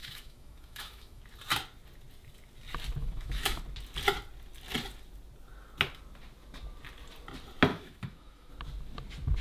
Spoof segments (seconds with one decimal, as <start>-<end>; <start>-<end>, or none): 0.0-1.2; 3.0-3.6; 7.7-8.5